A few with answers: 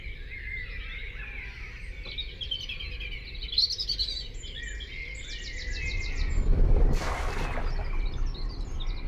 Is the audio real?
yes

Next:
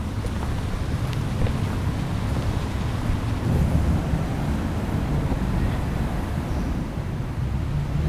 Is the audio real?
yes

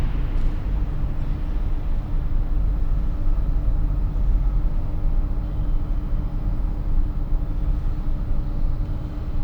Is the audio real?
yes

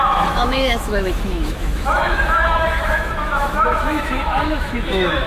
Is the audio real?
no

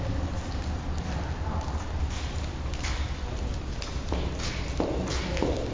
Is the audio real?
yes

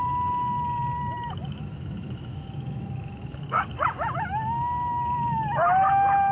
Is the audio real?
no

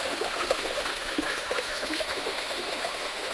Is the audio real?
no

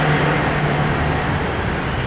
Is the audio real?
yes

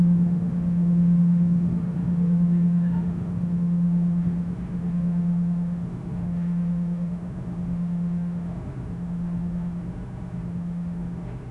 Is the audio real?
no